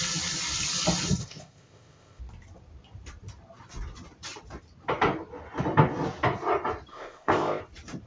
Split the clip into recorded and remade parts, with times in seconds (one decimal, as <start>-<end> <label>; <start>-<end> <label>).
0.0-1.2 recorded; 1.2-2.2 remade; 2.2-6.9 recorded; 6.9-7.6 remade; 7.6-8.1 recorded